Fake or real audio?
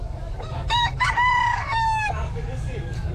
fake